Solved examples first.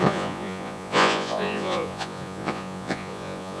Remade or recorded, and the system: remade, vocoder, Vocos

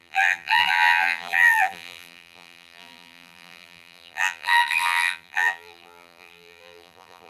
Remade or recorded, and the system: remade, vocoder, BigVGAN v2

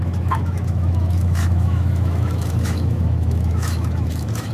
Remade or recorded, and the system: remade, autoencoder, DAC-VAE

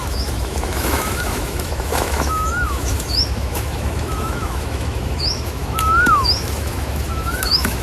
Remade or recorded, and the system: remade, autoencoder, DAC-VAE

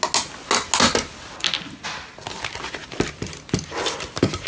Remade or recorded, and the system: recorded